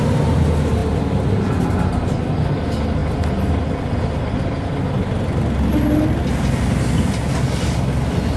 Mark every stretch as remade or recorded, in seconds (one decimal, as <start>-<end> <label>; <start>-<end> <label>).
0.0-8.4 recorded